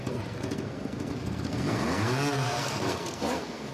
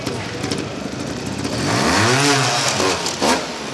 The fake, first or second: first